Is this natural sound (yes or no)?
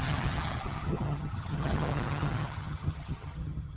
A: no